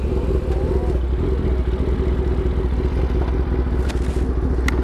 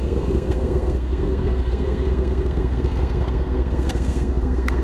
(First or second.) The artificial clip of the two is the second